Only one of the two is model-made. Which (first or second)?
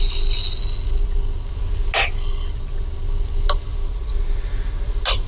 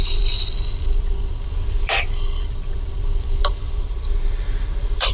second